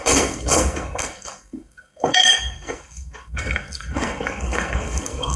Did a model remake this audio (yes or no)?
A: yes